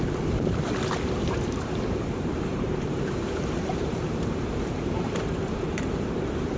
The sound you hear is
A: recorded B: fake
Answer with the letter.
B